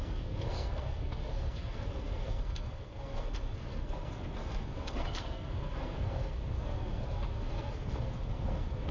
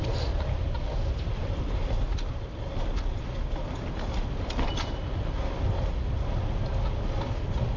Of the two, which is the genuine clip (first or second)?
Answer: second